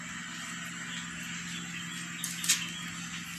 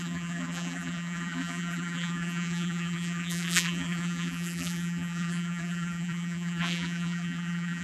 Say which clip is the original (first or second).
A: first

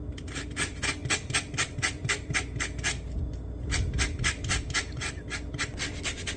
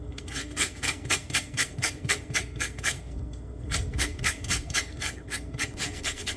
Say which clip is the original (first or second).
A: first